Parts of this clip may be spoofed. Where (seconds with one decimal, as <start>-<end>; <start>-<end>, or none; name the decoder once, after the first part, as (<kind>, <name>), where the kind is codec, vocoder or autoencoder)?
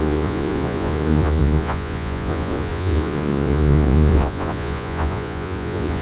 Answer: 0.0-6.0 (vocoder, Vocos)